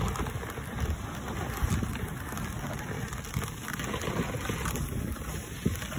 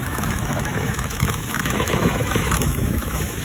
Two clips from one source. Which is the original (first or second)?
first